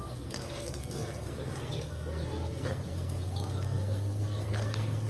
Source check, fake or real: fake